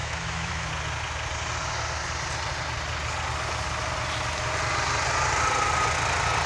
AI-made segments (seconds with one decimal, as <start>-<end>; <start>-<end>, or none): 0.0-0.7